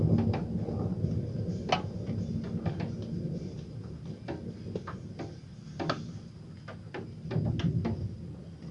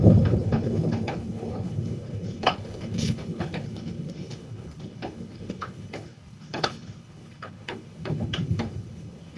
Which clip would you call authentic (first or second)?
first